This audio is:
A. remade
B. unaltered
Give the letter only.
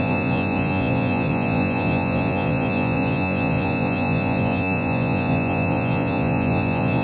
A